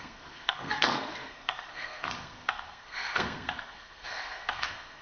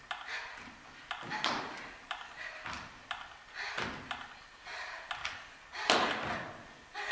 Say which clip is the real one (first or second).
second